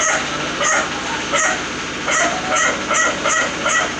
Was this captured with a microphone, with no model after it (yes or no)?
yes